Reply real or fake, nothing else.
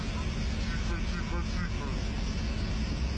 real